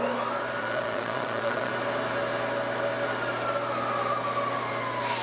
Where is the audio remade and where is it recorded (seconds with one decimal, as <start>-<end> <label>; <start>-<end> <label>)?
0.0-0.6 recorded; 0.6-1.7 remade; 1.7-5.2 recorded